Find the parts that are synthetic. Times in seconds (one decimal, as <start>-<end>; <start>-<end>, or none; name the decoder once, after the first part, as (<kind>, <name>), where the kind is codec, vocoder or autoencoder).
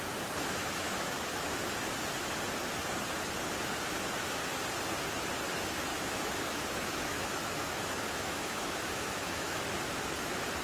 0.6-1.5 (autoencoder, DAC-VAE); 5.9-9.6